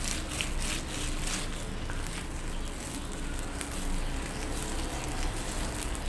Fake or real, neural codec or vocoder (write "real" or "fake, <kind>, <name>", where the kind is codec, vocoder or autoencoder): real